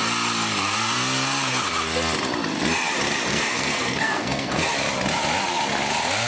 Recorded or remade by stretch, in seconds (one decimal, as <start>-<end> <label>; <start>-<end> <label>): 0.0-3.3 recorded; 3.3-4.7 remade; 4.7-6.3 recorded